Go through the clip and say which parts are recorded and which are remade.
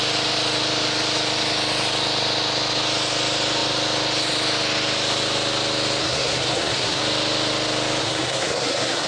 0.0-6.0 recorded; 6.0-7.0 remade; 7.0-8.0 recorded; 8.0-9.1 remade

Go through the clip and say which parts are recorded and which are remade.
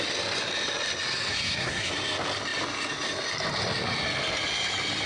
0.0-1.3 recorded; 1.3-1.9 remade; 1.9-5.1 recorded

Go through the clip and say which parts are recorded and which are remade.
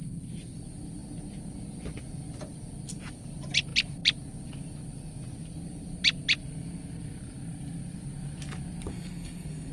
0.0-8.9 recorded; 8.9-9.7 remade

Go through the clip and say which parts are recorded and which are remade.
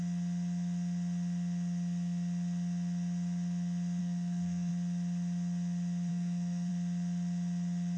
0.0-4.0 recorded; 4.0-4.7 remade; 4.7-6.1 recorded; 6.1-6.7 remade; 6.7-8.0 recorded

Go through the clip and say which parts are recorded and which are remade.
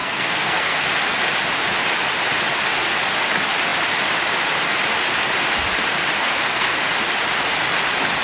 0.0-0.9 remade; 0.9-6.2 recorded; 6.2-6.8 remade; 6.8-8.2 recorded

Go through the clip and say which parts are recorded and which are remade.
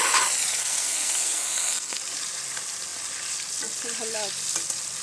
0.0-0.5 recorded; 0.5-2.0 remade; 2.0-5.0 recorded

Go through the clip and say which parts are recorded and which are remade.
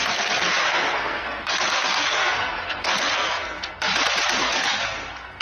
0.0-3.9 remade; 3.9-4.4 recorded; 4.4-5.4 remade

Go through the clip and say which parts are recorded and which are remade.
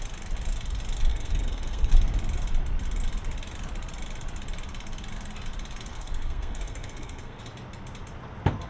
0.0-1.1 recorded; 1.1-1.9 remade; 1.9-5.9 recorded; 5.9-7.4 remade; 7.4-8.7 recorded